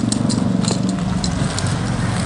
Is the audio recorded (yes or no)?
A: yes